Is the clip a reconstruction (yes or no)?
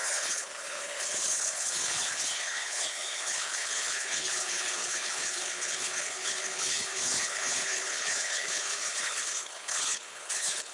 yes